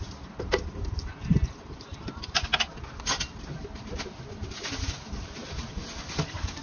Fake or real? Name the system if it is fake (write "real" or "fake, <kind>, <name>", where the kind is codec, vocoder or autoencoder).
real